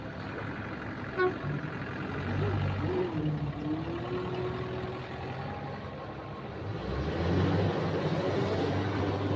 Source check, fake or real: real